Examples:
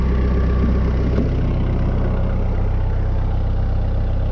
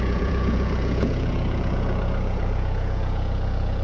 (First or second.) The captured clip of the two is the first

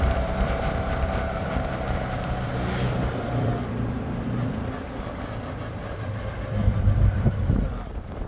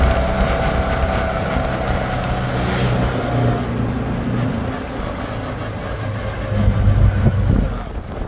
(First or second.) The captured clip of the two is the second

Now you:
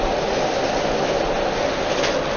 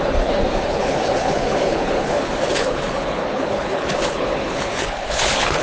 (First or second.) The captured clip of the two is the first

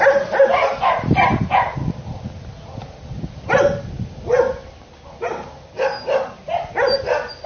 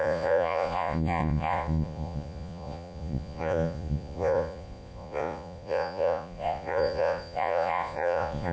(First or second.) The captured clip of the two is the first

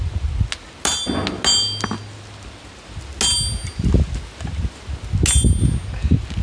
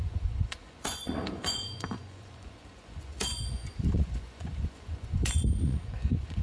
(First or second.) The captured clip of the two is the first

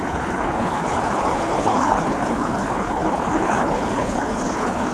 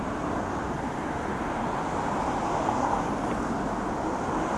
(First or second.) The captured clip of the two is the second